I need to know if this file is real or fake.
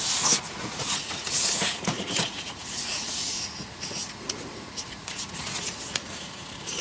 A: fake